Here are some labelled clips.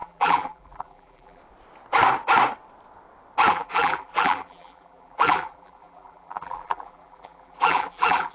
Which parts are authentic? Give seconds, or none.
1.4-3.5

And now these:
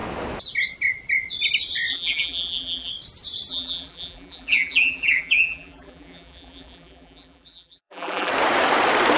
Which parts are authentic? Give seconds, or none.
0.0-1.9; 2.9-3.5; 8.3-9.2

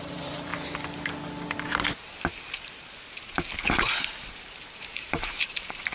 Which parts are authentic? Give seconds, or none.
0.5-4.0

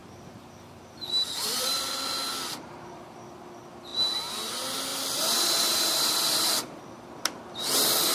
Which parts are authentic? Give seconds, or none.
1.9-4.9; 6.8-8.1

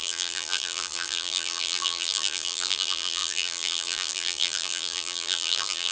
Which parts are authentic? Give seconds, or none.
none

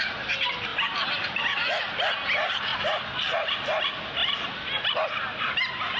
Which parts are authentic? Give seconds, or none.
0.0-0.7; 1.8-4.2; 4.9-6.0

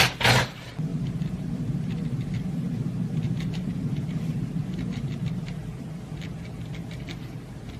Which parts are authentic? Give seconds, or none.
0.0-0.9; 5.5-7.8

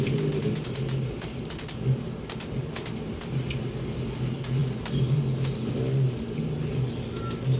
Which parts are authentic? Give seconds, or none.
0.0-7.6